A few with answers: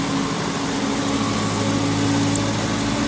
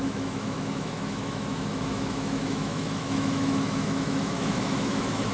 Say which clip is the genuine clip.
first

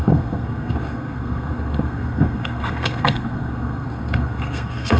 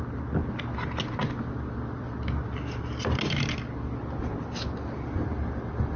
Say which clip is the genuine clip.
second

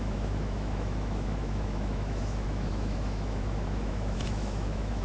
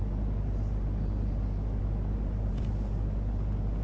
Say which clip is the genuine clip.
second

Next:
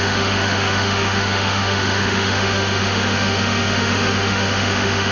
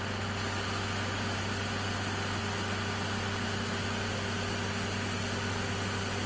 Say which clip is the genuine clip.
second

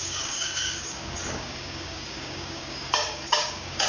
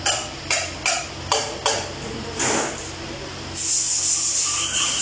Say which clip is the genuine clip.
second